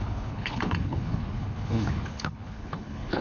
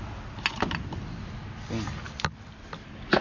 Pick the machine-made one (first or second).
first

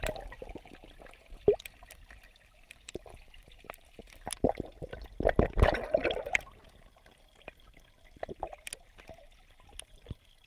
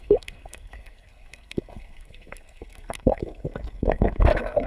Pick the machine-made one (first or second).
second